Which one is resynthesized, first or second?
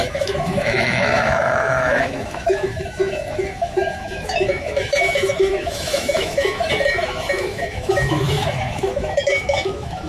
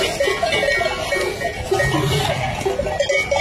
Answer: first